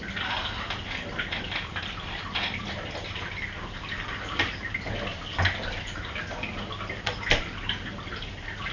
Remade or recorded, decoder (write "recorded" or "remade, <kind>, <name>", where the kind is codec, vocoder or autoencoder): recorded